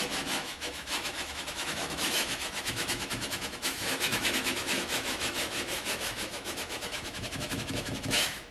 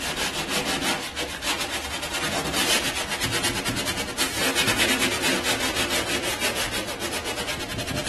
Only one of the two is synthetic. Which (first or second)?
first